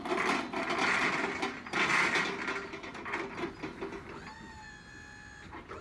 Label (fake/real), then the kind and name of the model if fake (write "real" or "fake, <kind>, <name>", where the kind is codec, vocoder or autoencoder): real